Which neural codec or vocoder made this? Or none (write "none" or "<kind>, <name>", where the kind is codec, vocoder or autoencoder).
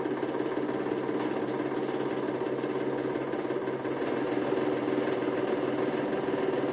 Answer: none